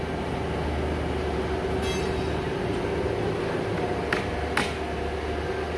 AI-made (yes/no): no